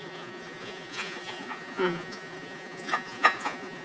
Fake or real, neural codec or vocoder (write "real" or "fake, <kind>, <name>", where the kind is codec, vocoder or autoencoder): fake, vocoder, Vocos